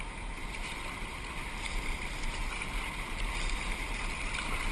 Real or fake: fake